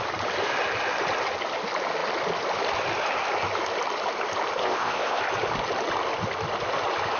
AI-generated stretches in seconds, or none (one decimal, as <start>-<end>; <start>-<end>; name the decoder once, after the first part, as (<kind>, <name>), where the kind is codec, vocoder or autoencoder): 4.6-5.2 (codec, ZipCodec)